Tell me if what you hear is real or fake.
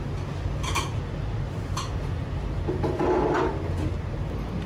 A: real